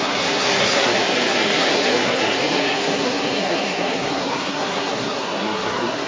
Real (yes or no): no